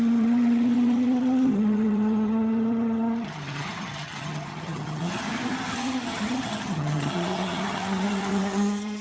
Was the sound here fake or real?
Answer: fake